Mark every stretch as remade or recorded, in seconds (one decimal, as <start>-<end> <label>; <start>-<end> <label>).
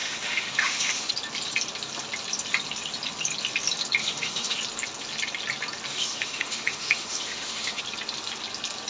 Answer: 0.0-1.1 remade; 1.1-4.0 recorded; 4.0-4.6 remade; 4.6-5.9 recorded; 5.9-7.8 remade; 7.8-8.9 recorded